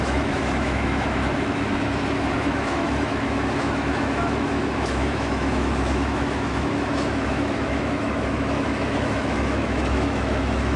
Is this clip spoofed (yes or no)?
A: yes